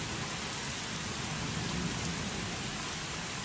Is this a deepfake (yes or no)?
no